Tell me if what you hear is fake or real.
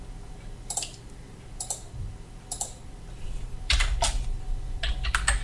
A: real